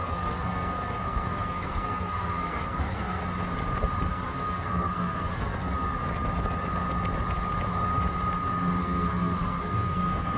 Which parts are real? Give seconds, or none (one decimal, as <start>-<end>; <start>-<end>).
3.2-4.1; 5.5-8.8